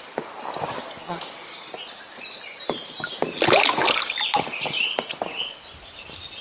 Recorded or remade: recorded